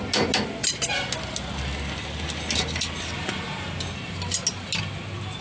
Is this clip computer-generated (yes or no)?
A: no